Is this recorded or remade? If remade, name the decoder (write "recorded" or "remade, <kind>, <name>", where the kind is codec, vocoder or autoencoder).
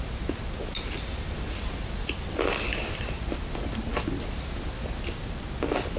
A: recorded